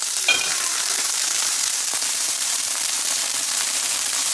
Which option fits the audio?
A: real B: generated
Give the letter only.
B